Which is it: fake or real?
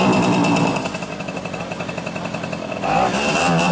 real